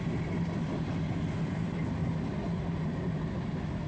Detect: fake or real real